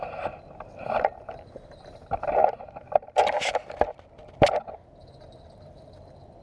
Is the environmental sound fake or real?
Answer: real